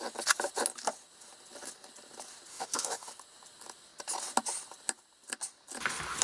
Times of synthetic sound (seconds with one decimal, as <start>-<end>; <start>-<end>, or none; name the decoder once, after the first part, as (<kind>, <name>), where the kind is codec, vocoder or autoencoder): 2.5-3.1 (autoencoder, DAC-VAE)